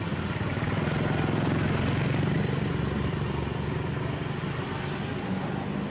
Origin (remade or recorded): recorded